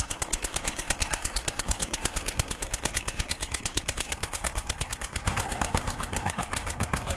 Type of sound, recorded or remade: remade